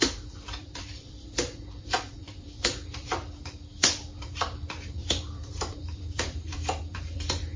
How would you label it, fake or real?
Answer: fake